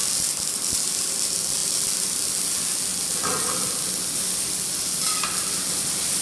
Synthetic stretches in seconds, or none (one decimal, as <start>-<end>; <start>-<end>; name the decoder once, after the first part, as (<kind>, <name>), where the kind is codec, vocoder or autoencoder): none